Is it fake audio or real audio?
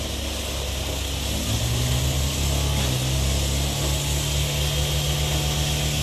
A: real